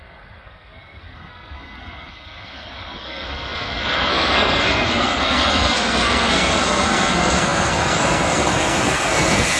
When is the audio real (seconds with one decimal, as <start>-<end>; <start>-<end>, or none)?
none